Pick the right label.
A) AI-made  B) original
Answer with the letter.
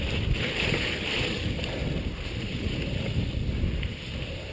B